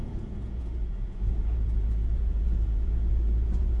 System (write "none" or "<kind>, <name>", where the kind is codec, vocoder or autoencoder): vocoder, Vocos